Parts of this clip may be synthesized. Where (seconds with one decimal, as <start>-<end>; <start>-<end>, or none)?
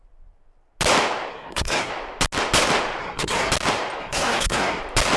1.3-1.9; 3.0-3.5; 4.0-4.8